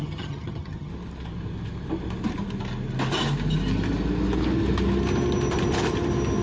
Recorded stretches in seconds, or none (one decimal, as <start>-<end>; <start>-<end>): 0.9-6.4